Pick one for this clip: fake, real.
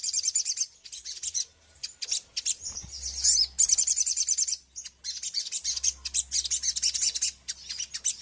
real